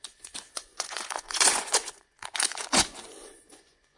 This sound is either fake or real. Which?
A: fake